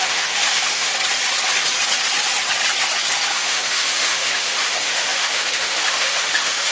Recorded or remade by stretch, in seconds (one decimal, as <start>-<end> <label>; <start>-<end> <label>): 0.0-0.9 remade; 0.9-3.3 recorded; 3.3-6.7 remade